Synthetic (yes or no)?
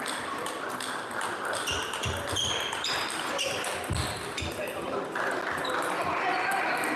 no